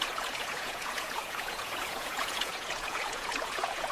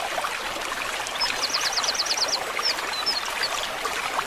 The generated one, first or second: first